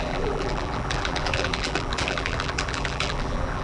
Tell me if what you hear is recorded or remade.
remade